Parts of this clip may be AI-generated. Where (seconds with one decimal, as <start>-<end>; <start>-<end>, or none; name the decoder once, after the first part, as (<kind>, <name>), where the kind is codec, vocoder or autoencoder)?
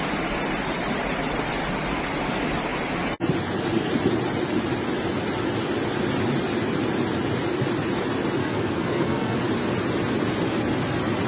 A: 8.4-9.4 (codec, SNAC)